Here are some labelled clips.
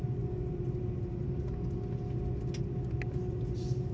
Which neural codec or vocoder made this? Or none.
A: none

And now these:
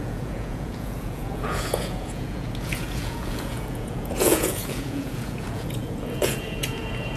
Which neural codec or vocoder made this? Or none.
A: vocoder, Vocos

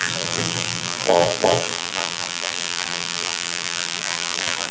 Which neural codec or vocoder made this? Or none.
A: vocoder, BigVGAN v2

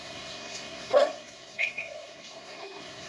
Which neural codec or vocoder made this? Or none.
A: codec, SNAC